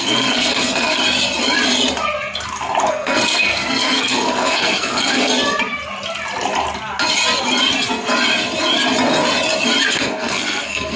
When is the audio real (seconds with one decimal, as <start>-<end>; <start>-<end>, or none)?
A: 1.0-2.9; 5.3-9.9